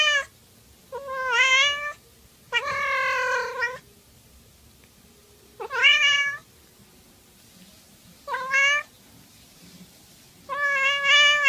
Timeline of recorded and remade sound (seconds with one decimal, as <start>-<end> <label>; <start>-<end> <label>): 0.0-11.5 recorded